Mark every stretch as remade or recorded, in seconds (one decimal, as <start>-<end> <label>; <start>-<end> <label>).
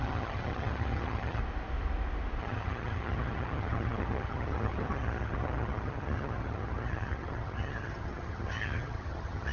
0.0-1.4 remade; 1.4-2.4 recorded; 2.4-9.5 remade